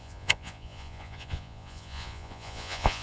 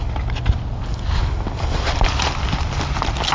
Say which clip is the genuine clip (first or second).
second